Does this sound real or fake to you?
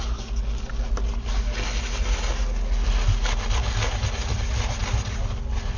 real